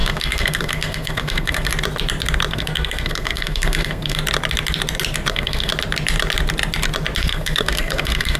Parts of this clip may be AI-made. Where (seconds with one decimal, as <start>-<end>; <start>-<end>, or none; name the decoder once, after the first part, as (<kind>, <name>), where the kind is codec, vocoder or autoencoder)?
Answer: 0.0-1.7 (codec, SNAC); 2.5-4.2; 5.3-5.7; 7.2-8.4